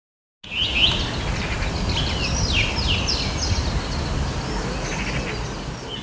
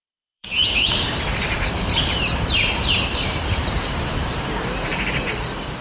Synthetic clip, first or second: second